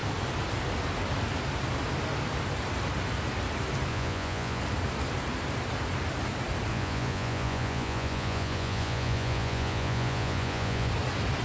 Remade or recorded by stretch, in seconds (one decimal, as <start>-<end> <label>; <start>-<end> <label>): 0.0-3.9 recorded; 3.9-4.6 remade; 4.6-6.7 recorded; 6.7-10.9 remade; 10.9-11.4 recorded